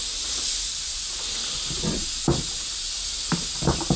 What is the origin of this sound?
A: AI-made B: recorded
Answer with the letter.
B